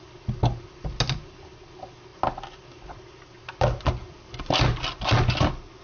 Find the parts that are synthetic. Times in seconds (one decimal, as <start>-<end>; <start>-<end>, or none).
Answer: none